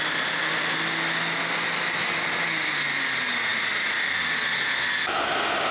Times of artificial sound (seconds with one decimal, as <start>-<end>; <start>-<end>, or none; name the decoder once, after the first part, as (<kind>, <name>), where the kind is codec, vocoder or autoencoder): none